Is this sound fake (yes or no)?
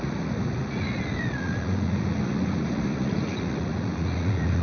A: yes